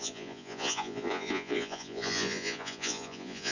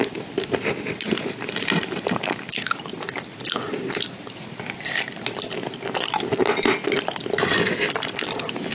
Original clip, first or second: second